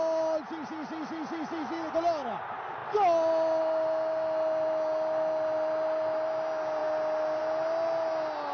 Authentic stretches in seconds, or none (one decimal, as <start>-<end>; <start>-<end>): 0.0-8.5